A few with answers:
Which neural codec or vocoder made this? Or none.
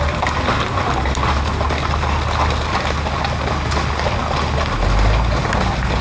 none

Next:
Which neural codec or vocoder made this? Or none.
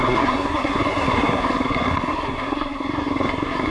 codec, SNAC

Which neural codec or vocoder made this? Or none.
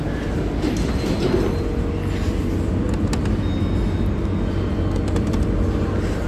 none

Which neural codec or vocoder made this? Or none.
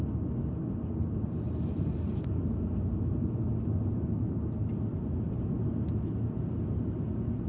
none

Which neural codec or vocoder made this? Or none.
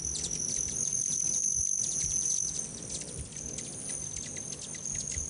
none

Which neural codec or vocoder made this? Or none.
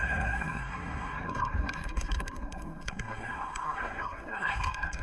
codec, SNAC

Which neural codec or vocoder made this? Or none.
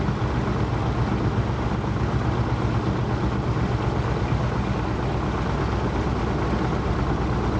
none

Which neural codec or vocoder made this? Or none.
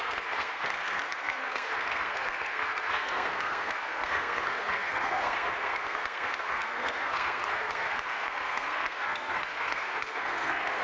codec, SNAC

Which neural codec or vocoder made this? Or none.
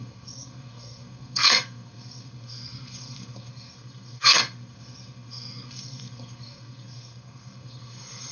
codec, SNAC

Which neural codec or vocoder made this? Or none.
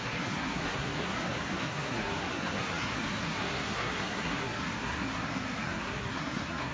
codec, SNAC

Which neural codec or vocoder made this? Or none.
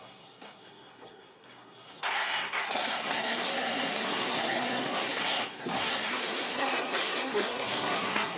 codec, SNAC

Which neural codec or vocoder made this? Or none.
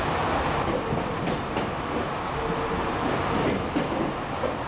none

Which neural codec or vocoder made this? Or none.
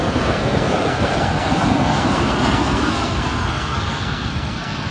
codec, SNAC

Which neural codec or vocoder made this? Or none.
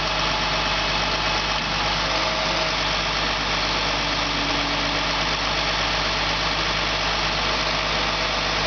none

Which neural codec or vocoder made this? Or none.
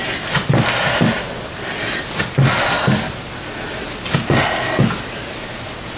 none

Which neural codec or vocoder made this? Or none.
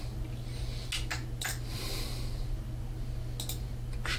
none